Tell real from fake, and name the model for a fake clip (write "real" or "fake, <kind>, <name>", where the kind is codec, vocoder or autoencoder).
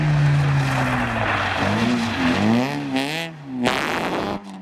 real